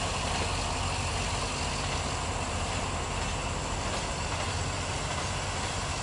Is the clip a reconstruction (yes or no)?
no